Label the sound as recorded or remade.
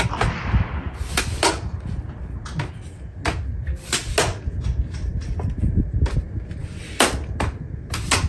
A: recorded